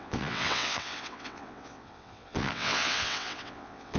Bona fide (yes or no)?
no